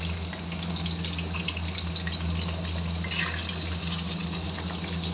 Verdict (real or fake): real